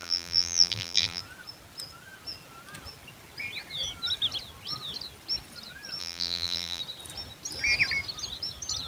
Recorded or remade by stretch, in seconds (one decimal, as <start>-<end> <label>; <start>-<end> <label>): 0.0-1.2 remade; 1.2-6.0 recorded; 6.0-6.8 remade; 6.8-8.9 recorded